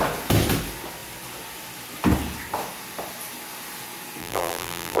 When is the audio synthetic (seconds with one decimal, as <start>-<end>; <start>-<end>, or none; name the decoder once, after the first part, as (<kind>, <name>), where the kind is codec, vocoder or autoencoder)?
4.2-5.0 (vocoder, BigVGAN v2)